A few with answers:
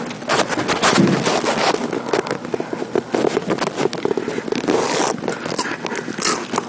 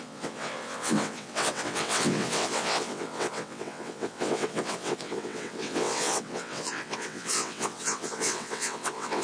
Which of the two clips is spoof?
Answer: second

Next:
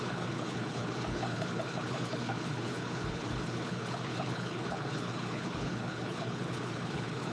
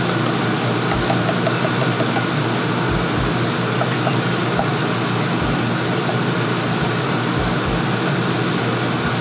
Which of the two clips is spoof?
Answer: first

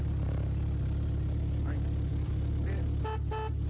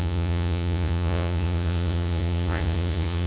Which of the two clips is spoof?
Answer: second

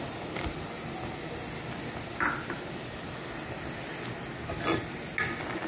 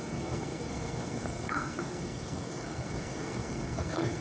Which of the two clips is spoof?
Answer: second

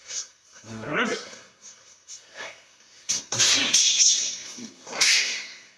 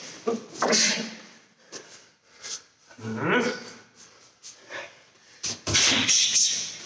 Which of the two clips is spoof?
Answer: first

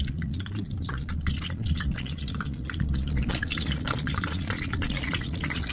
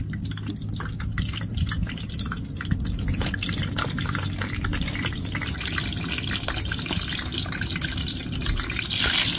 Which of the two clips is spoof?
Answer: first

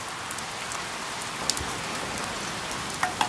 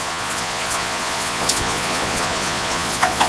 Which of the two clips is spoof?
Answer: second